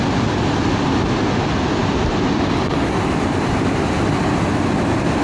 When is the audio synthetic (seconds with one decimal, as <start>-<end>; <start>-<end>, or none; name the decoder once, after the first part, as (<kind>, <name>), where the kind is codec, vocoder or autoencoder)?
none